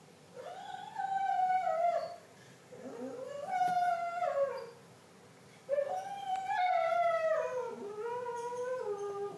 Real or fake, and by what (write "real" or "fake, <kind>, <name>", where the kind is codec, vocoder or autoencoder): real